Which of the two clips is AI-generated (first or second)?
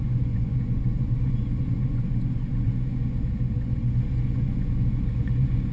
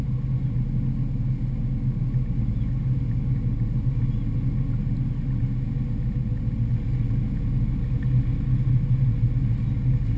first